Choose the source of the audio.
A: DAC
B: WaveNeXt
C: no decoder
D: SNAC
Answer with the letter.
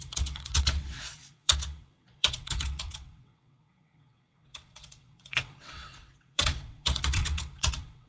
B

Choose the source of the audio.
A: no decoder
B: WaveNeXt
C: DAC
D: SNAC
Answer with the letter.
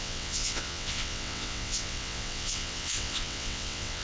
B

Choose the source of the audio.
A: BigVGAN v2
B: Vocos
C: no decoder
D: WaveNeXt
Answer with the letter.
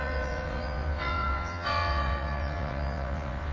D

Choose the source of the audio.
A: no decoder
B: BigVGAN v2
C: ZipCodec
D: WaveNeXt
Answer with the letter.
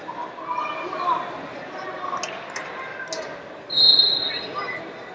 A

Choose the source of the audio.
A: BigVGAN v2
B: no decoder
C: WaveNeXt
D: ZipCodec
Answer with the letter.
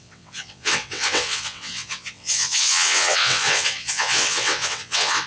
C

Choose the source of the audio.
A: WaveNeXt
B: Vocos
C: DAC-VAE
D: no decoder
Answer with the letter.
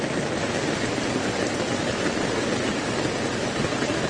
D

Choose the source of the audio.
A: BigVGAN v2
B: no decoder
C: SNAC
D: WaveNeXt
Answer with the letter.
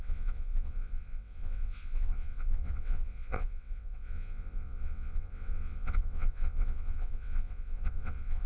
D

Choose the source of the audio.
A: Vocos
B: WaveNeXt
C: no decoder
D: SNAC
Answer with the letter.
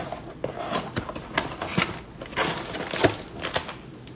C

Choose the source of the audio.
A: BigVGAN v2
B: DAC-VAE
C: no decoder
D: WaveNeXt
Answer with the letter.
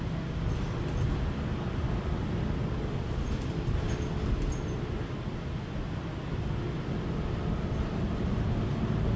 C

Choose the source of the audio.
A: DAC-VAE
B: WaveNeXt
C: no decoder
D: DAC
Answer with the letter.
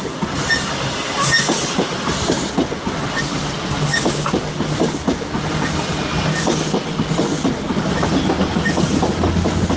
C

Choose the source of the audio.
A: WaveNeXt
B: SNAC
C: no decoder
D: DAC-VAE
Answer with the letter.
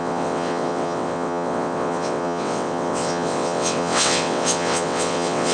A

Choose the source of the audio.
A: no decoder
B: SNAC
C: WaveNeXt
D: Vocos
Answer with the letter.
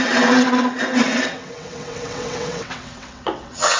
C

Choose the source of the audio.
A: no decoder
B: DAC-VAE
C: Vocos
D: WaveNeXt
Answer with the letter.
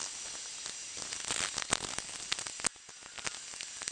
A